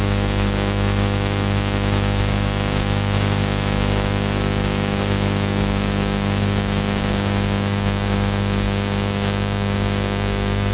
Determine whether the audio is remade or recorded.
remade